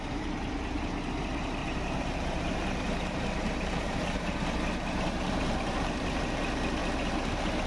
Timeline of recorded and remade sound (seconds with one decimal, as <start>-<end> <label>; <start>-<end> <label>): 0.0-1.6 recorded; 1.6-6.2 remade; 6.2-7.7 recorded